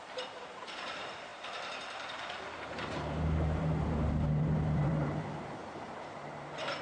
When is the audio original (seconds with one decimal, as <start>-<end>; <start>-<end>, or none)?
none